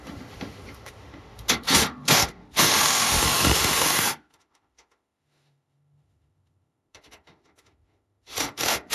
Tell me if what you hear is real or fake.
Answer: fake